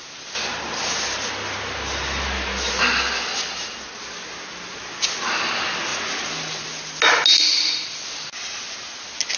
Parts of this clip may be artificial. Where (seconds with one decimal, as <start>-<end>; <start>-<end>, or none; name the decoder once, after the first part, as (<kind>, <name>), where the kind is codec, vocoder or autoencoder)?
none